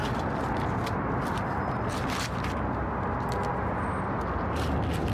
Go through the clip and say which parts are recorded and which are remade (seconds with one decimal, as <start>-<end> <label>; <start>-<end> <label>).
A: 0.0-5.1 recorded